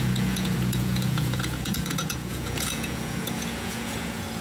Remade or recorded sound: remade